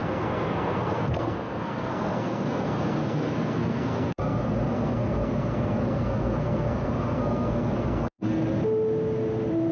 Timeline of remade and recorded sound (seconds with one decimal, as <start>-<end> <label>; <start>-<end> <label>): 0.0-8.4 remade; 8.4-9.7 recorded